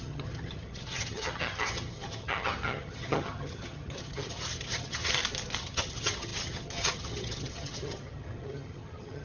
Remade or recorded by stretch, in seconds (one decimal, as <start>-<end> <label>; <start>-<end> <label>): 0.0-5.1 remade; 5.1-5.6 recorded; 5.6-9.2 remade